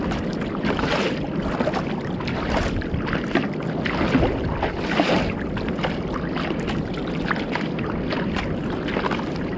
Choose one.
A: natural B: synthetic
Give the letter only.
A